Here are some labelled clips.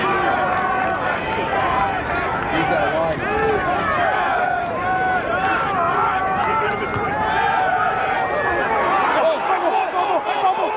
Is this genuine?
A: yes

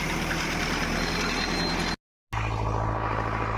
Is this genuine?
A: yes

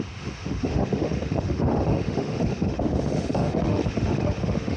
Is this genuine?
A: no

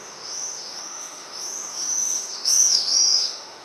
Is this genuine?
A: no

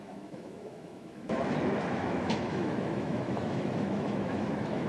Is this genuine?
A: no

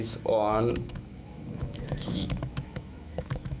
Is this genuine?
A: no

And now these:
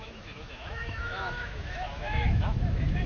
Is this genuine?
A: no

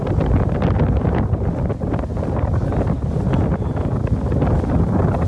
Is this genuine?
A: yes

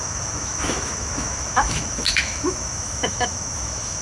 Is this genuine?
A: no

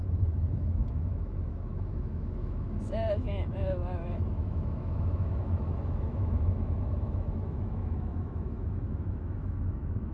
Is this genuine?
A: no